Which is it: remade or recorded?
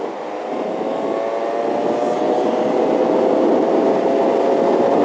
recorded